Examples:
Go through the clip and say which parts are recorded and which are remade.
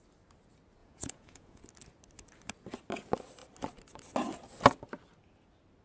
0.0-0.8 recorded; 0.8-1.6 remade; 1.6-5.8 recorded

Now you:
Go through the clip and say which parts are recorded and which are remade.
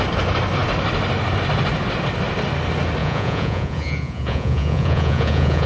0.0-3.0 recorded; 3.0-5.7 remade